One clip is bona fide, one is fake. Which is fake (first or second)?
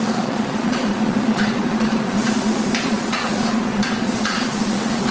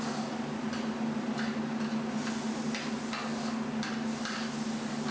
first